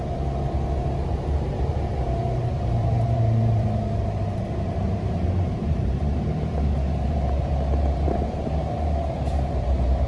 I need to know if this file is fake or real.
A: fake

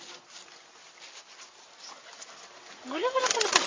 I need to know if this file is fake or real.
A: real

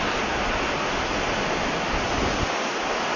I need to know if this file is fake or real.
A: real